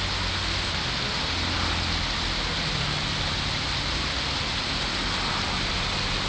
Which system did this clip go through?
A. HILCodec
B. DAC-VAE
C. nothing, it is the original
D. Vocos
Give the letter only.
C